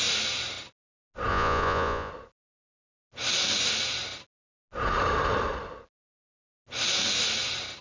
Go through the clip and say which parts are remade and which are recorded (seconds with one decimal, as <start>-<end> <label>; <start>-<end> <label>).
0.0-1.3 recorded; 1.3-2.1 remade; 2.1-7.8 recorded